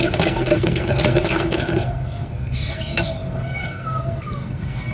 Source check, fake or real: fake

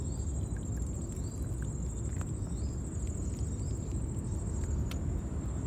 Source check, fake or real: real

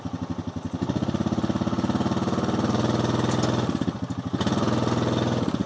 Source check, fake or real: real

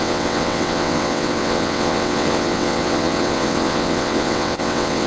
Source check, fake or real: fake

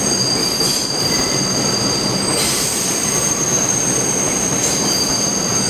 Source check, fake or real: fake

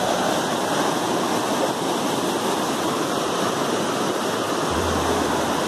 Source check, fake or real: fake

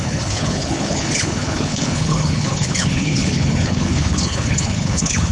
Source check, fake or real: fake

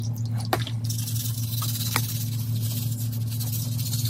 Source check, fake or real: real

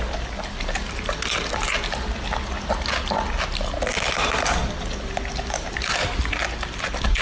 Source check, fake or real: real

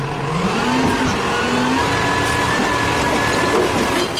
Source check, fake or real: real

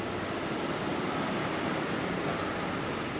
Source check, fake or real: real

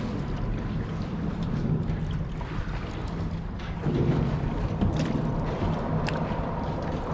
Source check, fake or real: real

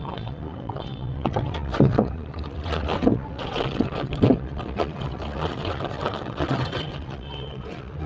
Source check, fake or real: fake